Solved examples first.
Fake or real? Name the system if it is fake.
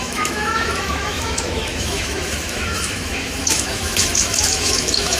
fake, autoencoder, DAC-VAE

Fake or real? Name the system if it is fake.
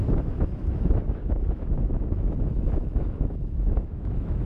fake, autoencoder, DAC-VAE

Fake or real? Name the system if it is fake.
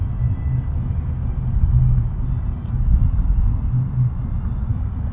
real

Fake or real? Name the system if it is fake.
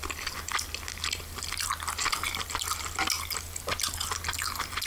real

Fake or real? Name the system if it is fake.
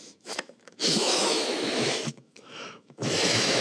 fake, autoencoder, DAC-VAE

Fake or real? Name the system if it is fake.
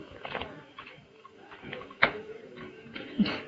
fake, autoencoder, DAC-VAE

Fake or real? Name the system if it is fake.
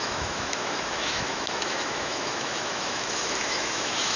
fake, autoencoder, DAC-VAE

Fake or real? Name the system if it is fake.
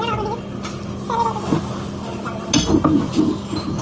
real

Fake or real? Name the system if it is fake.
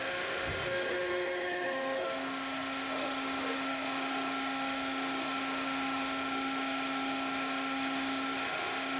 fake, autoencoder, DAC-VAE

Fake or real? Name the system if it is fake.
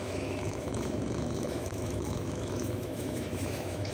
fake, autoencoder, DAC-VAE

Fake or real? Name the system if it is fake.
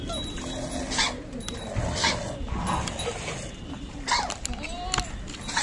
real